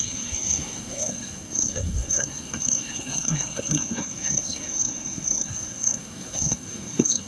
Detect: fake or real fake